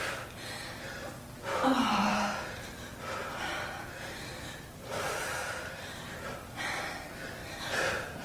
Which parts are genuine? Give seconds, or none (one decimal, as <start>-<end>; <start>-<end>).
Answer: 0.0-1.7; 3.9-4.3; 5.9-7.4